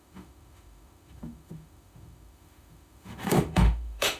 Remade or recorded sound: remade